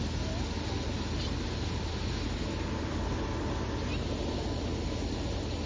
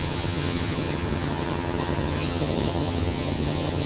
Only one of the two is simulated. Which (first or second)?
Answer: second